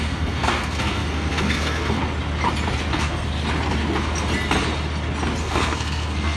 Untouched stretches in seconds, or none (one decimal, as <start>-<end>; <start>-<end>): 2.0-2.9; 3.3-5.4